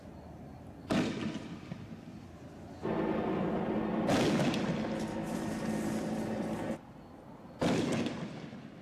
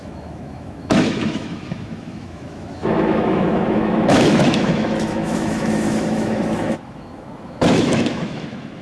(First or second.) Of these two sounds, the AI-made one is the second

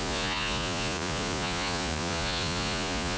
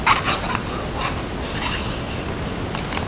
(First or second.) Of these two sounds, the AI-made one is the first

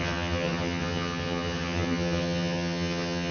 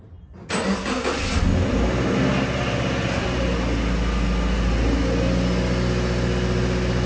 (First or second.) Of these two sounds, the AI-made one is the first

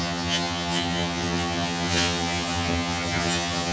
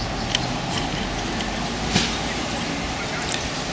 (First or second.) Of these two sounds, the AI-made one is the first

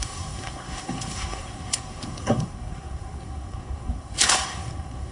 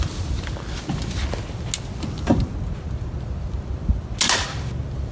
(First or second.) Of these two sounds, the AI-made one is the first